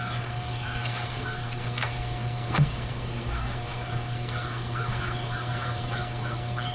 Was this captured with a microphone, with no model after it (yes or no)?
no